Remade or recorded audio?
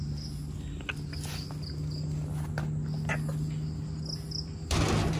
recorded